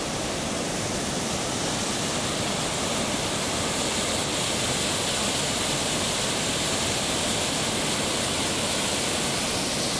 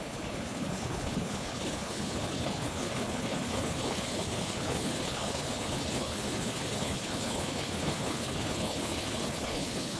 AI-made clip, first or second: second